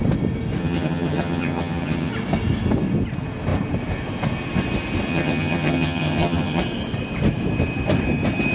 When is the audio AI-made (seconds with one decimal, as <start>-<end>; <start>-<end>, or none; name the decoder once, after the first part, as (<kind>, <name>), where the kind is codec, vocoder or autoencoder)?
0.6-2.1 (vocoder, HiFi-GAN); 5.1-6.6